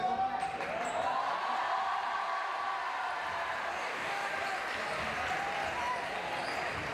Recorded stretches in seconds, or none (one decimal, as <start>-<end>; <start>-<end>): 0.0-3.7; 4.3-6.9